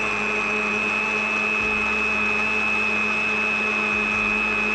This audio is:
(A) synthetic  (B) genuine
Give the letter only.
B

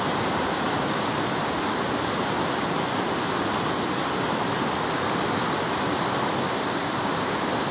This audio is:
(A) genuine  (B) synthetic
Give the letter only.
A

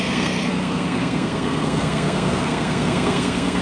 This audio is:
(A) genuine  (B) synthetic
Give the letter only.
B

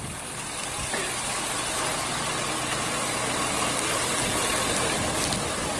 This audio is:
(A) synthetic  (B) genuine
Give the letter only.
B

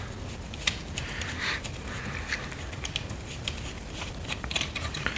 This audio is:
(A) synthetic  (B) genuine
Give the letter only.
A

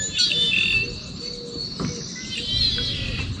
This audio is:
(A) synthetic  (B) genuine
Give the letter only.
B